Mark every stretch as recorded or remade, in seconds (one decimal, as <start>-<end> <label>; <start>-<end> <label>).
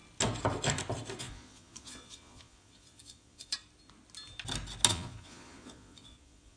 0.0-1.2 recorded; 1.2-3.5 remade; 3.5-4.9 recorded; 4.9-6.6 remade